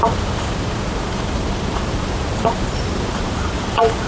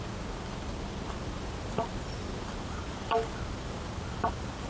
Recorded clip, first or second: second